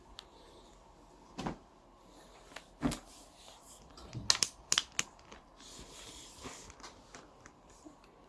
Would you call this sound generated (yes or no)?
no